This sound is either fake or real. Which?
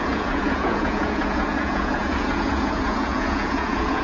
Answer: fake